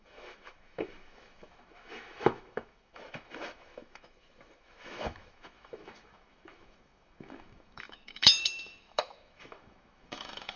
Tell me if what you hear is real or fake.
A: fake